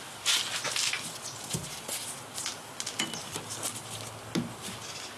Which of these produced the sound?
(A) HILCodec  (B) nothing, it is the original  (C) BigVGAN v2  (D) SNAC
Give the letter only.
B